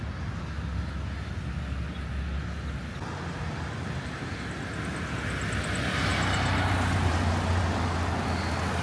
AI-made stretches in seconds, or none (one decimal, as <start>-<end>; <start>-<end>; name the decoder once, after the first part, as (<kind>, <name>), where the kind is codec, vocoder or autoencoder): none